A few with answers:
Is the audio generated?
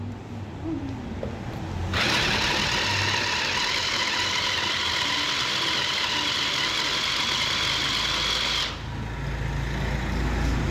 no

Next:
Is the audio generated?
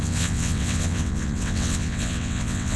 yes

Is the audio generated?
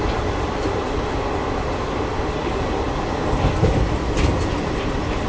no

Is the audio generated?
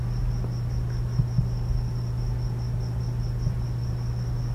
no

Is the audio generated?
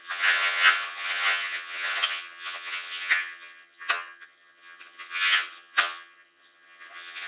yes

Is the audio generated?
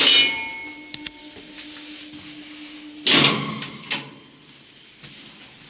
no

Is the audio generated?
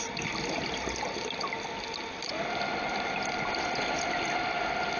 no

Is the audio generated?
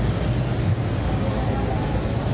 no